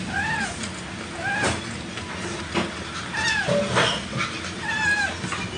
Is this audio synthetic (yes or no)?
no